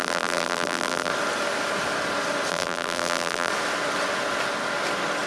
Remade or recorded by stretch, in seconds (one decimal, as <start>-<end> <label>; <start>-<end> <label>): 0.0-1.1 remade; 1.1-2.5 recorded; 2.5-3.5 remade; 3.5-5.3 recorded